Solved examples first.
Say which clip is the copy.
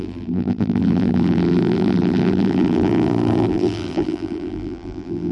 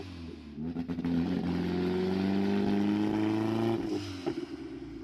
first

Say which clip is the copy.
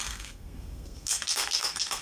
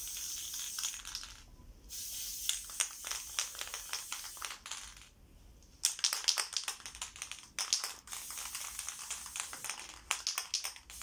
first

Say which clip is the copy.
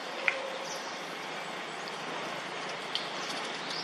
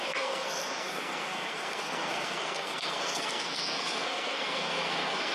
second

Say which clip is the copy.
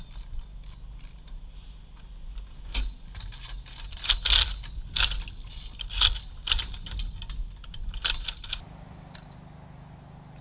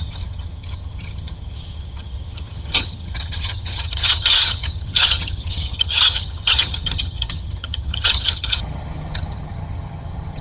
second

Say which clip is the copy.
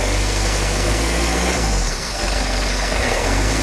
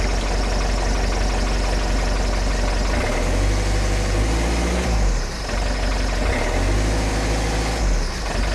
first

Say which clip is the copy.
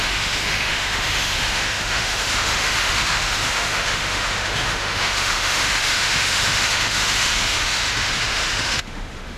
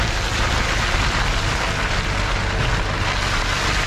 first